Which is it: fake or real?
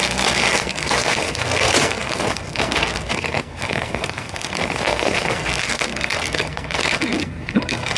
fake